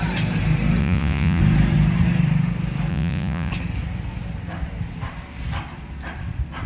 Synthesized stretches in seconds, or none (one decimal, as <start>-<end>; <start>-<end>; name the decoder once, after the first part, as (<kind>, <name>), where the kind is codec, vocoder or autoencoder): 0.8-1.4 (vocoder, Vocos); 2.9-3.5